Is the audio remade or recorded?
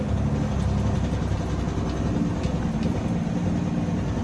recorded